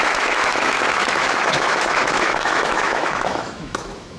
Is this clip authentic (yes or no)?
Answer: no